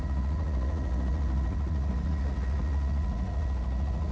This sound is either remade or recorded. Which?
remade